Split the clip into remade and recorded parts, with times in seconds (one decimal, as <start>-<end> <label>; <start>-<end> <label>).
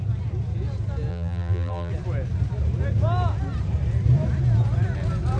0.0-1.1 recorded; 1.1-1.9 remade; 1.9-5.4 recorded